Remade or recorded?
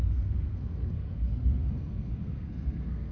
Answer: remade